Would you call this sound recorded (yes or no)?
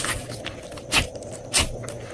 yes